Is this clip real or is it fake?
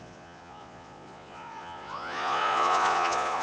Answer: fake